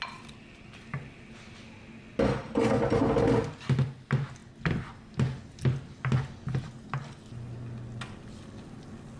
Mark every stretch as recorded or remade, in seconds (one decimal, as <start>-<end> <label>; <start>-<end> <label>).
0.0-9.2 recorded